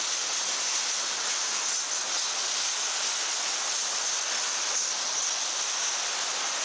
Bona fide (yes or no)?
yes